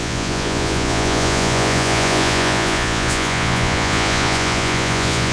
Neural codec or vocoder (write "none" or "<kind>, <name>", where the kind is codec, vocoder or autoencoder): vocoder, Vocos